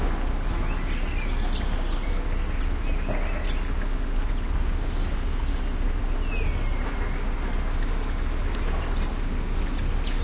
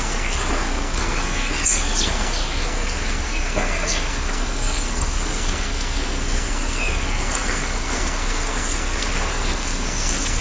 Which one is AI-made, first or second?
second